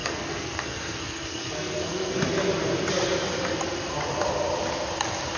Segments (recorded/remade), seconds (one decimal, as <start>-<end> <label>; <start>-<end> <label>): 0.0-2.2 remade; 2.2-5.4 recorded